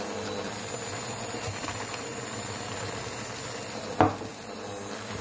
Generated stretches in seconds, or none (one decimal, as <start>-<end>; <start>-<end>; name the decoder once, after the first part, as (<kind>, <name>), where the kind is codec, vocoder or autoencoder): none